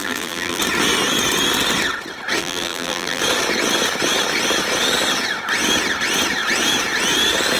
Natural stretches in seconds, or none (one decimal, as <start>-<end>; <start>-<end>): 0.6-2.4; 3.2-7.6